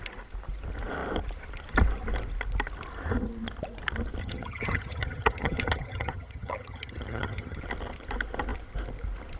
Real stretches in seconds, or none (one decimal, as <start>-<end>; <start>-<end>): 0.0-4.2; 7.6-9.4